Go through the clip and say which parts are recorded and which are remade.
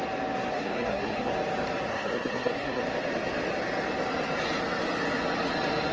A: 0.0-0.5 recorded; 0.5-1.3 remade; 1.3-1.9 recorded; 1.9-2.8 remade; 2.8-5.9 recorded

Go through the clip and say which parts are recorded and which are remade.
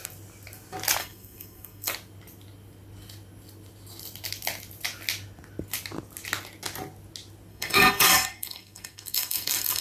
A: 0.0-1.0 recorded; 1.0-1.9 remade; 1.9-7.5 recorded; 7.5-9.8 remade